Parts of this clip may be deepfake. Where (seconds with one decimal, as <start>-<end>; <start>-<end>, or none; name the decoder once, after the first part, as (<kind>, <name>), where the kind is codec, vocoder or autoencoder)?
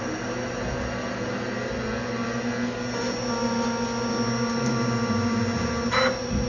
none